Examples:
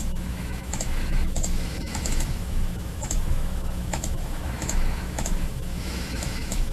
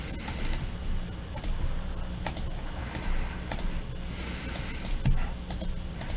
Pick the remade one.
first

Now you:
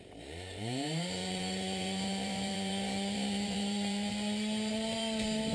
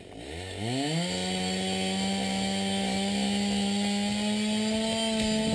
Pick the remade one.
first